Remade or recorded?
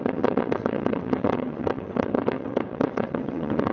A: remade